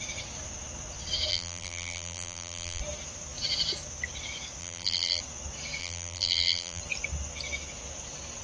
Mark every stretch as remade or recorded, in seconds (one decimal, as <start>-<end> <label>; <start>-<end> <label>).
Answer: 0.0-1.3 recorded; 1.3-2.8 remade; 2.8-4.6 recorded; 4.6-5.2 remade; 5.2-5.8 recorded; 5.8-6.8 remade; 6.8-8.4 recorded